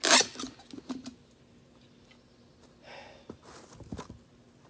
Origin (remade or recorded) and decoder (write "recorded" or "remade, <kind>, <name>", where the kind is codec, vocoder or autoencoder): recorded